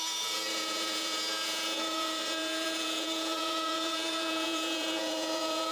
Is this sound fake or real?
fake